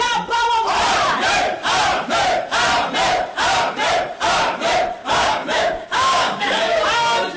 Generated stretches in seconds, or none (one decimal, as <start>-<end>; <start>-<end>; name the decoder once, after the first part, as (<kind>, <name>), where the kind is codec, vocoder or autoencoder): 5.0-6.8 (codec, DAC)